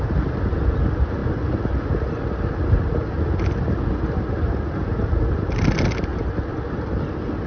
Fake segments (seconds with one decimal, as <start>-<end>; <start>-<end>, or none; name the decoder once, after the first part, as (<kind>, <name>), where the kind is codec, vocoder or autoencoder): none